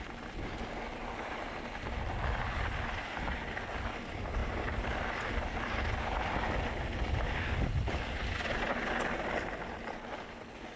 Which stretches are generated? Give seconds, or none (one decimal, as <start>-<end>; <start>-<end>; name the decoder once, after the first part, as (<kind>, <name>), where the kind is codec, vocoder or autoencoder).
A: none